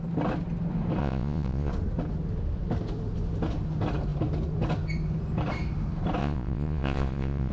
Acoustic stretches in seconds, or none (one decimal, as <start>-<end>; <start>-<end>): 0.0-1.0; 1.7-6.2